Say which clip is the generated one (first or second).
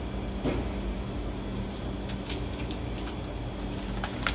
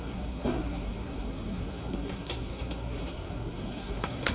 second